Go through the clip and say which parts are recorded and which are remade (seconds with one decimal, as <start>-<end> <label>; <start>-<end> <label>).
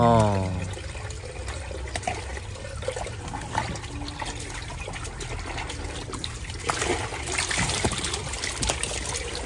0.0-9.5 recorded